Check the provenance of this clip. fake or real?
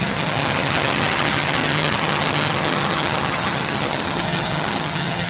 fake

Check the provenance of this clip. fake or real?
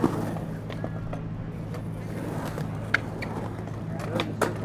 real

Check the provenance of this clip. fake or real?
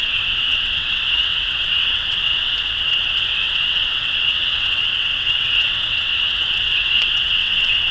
fake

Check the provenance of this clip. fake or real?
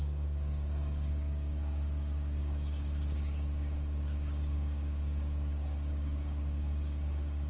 fake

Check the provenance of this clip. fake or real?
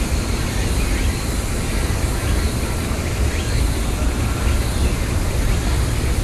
real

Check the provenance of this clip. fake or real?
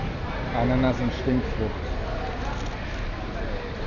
real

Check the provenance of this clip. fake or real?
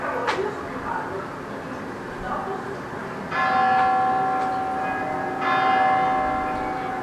real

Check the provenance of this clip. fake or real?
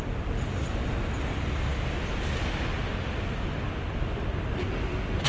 real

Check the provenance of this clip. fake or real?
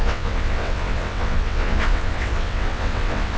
fake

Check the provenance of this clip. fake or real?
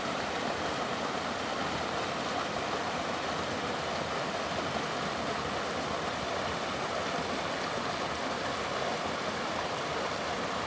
real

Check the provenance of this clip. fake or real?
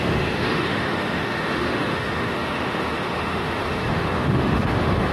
fake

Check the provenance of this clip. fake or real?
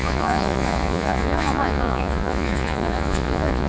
fake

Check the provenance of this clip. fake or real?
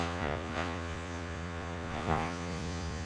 fake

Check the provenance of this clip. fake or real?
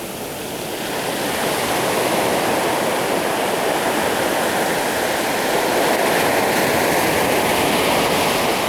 real